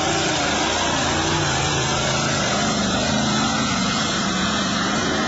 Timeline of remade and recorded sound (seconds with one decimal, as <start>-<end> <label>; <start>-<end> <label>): 0.0-1.7 recorded; 1.7-5.3 remade